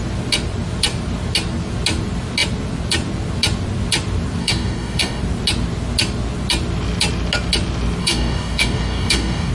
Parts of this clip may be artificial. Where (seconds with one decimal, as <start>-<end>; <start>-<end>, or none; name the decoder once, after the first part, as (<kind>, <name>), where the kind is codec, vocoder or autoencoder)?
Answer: 4.4-5.2 (codec, DAC); 8.0-9.5